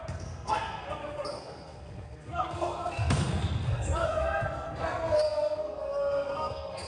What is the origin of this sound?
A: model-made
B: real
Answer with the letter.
A